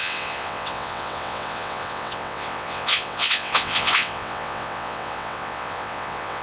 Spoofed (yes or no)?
yes